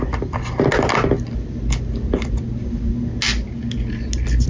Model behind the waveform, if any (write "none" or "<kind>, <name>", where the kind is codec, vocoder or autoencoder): none